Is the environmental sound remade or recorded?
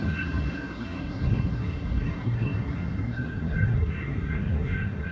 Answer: remade